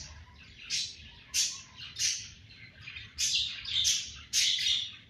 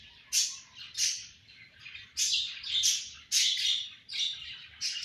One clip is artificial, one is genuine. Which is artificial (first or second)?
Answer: first